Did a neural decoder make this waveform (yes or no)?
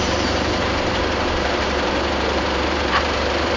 yes